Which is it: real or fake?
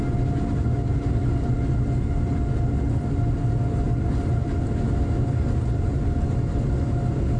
real